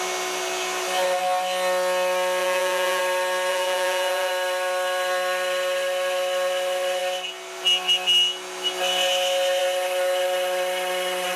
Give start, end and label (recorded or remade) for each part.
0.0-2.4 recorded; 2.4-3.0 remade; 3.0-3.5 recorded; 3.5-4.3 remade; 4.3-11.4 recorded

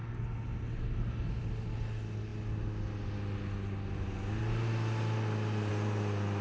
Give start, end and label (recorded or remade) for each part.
0.0-6.4 recorded

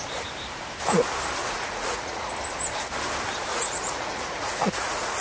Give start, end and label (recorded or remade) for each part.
0.0-1.4 recorded; 1.4-2.3 remade; 2.3-3.5 recorded; 3.5-5.2 remade

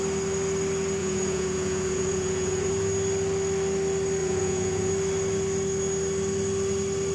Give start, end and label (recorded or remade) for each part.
0.0-1.0 recorded; 1.0-2.7 remade; 2.7-4.2 recorded; 4.2-4.9 remade; 4.9-7.1 recorded

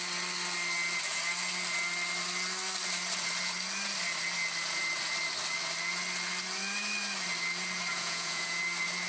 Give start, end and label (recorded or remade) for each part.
0.0-7.9 recorded; 7.9-8.6 remade; 8.6-9.1 recorded

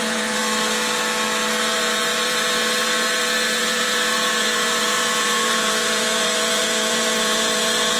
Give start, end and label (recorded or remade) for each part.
0.0-0.4 remade; 0.4-1.6 recorded; 1.6-8.0 remade

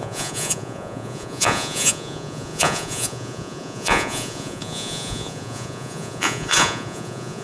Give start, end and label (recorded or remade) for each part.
0.0-7.4 remade

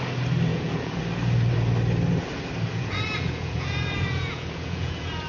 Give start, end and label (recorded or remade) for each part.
0.0-0.5 recorded; 0.5-1.0 remade; 1.0-2.7 recorded; 2.7-5.3 remade